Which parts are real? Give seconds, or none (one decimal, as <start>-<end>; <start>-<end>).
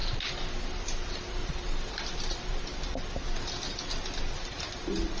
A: 0.0-1.4; 3.0-4.4